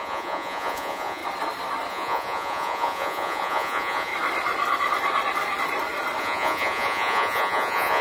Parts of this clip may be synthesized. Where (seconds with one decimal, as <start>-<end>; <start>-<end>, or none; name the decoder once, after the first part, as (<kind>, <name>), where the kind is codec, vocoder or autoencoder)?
0.0-1.2 (vocoder, Vocos); 1.9-4.1; 6.2-8.0